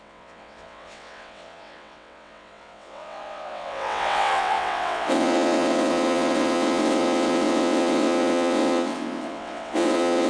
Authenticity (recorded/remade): remade